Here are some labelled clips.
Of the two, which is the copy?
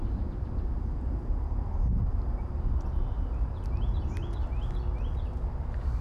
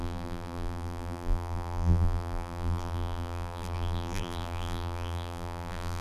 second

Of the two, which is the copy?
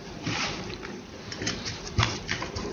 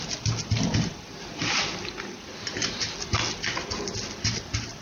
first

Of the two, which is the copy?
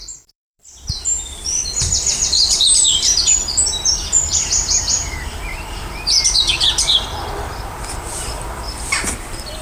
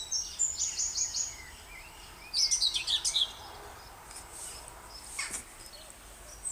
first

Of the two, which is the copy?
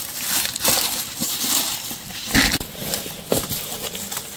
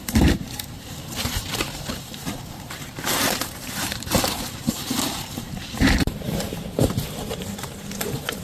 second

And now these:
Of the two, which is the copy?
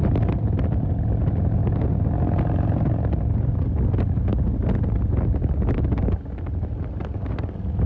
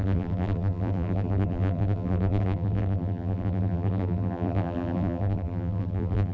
second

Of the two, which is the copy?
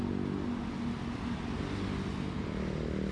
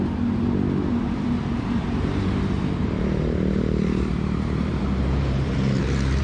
second